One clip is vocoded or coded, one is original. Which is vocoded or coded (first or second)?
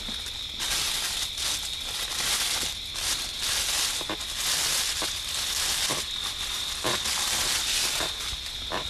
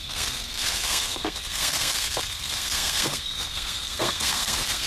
second